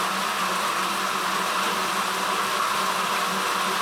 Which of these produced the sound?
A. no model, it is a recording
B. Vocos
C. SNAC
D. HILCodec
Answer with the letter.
A